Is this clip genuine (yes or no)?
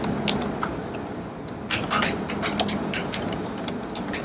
yes